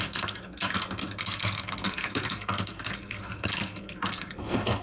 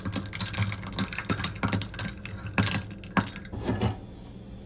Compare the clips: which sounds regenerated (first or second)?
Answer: first